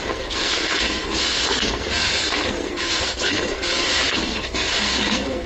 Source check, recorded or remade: remade